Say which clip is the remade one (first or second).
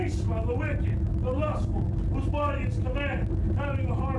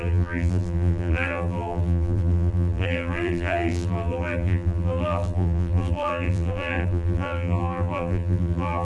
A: second